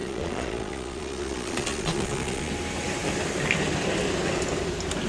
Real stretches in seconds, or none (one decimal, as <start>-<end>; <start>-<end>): 2.5-5.1